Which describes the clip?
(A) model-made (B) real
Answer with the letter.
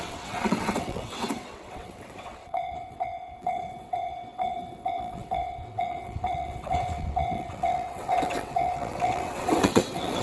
A